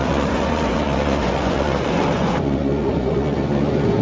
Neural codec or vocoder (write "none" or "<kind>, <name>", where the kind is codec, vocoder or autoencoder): vocoder, Vocos